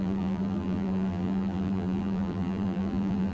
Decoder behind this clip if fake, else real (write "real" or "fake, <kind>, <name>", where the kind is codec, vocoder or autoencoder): fake, vocoder, BigVGAN v2